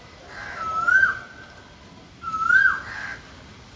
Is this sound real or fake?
real